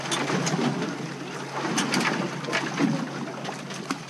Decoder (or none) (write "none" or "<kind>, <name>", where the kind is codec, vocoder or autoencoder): none